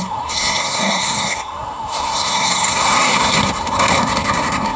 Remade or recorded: remade